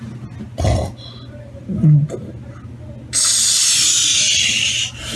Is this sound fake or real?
real